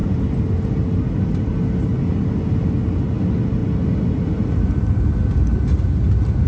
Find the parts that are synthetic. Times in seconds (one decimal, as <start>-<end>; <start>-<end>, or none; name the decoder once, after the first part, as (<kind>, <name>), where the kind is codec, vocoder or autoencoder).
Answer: none